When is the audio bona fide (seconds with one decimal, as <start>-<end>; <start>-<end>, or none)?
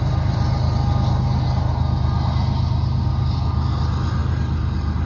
0.0-5.1